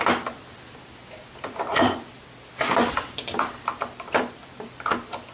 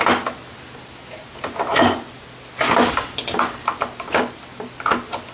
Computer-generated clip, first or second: first